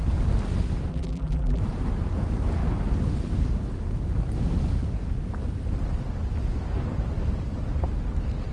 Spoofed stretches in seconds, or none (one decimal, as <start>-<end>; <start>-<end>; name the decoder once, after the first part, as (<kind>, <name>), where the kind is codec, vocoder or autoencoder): 0.9-1.6 (vocoder, BigVGAN v2)